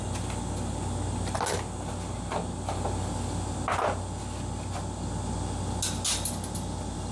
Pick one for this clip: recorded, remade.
recorded